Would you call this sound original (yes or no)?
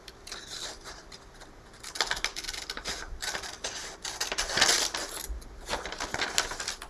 yes